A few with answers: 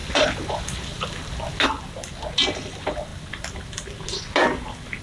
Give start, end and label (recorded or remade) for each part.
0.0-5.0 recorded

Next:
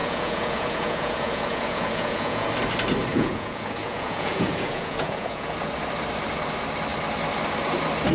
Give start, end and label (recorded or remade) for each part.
0.0-2.5 remade; 2.5-3.1 recorded; 3.1-5.7 remade; 5.7-8.1 recorded

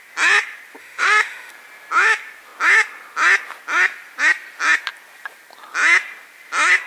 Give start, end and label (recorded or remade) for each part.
0.0-0.8 recorded; 0.8-1.5 remade; 1.5-6.9 recorded

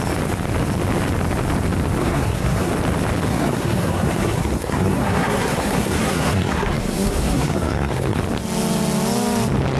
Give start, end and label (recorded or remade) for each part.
0.0-2.0 recorded; 2.0-2.7 remade; 2.7-3.3 recorded; 3.3-8.2 remade; 8.2-9.8 recorded

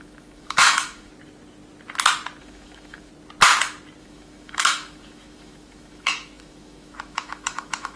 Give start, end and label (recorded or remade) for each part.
0.0-1.1 remade; 1.1-2.4 recorded; 2.4-3.1 remade; 3.1-4.0 recorded; 4.0-8.0 remade